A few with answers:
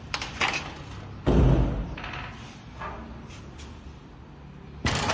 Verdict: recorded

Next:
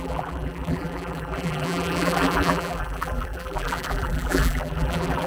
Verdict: remade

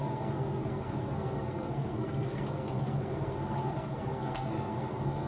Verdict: remade